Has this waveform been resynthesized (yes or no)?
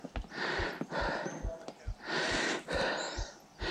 no